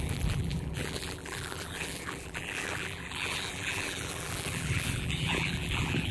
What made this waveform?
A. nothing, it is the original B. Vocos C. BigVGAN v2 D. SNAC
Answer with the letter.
C